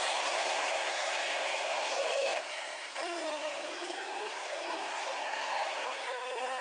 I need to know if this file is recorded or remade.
remade